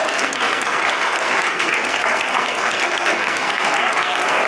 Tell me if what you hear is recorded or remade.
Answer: remade